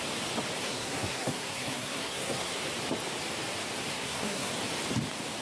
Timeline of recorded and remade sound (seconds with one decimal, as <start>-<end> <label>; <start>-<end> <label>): 0.0-0.6 recorded; 0.6-2.6 remade; 2.6-3.9 recorded; 3.9-4.5 remade; 4.5-5.4 recorded